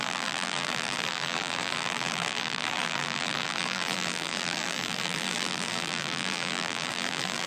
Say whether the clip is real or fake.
fake